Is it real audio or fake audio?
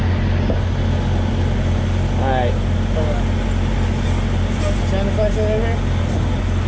real